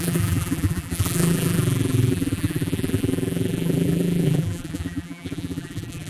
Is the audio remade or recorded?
remade